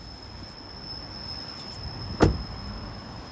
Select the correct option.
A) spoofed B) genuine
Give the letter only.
B